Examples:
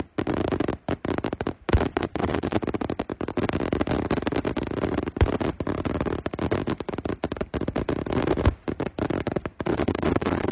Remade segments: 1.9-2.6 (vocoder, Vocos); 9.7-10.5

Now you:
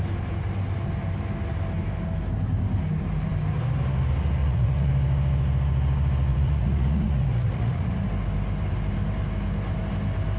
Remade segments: 4.4-4.9 (vocoder, Vocos); 6.3-7.9